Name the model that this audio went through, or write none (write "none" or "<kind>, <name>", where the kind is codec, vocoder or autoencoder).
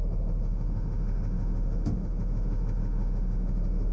autoencoder, DAC-VAE